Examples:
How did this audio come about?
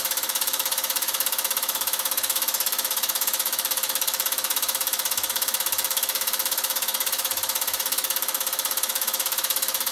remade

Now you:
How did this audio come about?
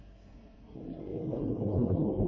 remade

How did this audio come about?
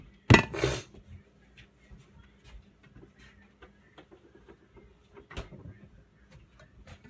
recorded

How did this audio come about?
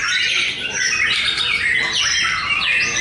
recorded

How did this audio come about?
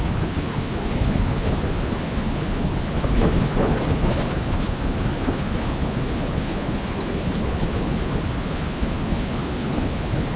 remade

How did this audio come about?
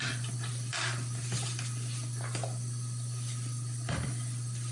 recorded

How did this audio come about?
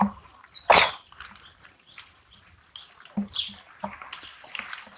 remade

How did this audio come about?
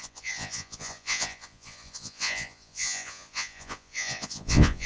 remade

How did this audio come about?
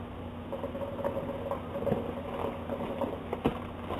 recorded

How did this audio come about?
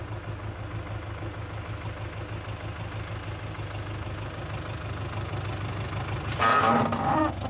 recorded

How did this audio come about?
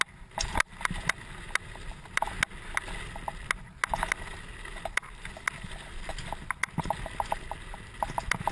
recorded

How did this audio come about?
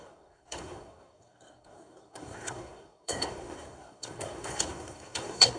remade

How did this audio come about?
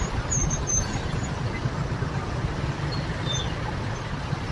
recorded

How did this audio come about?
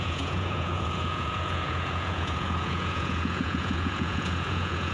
remade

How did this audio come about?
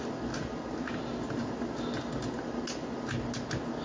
recorded